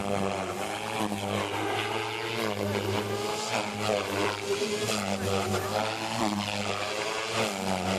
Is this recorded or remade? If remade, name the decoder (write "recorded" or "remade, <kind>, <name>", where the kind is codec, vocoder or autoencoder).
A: recorded